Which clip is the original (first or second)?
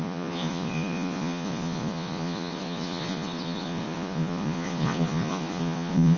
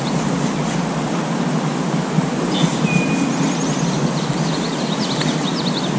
second